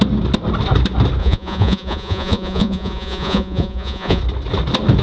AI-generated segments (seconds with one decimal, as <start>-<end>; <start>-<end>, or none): 1.2-4.2